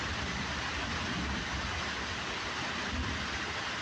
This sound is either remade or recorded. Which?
recorded